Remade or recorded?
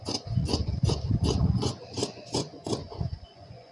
remade